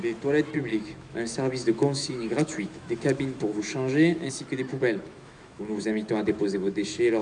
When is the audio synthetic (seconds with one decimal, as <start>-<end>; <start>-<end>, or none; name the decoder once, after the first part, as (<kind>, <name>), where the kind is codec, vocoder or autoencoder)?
0.7-4.3 (autoencoder, DAC-VAE); 4.7-7.2